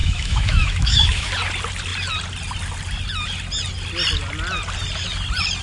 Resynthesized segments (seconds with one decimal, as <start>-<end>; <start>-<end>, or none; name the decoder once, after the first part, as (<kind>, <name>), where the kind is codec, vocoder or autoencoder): 0.0-1.3 (autoencoder, DAC-VAE)